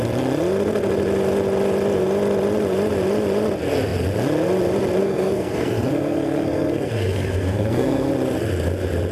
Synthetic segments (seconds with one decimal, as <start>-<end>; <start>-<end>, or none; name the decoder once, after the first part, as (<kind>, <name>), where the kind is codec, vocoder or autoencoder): 5.0-8.1 (codec, SNAC)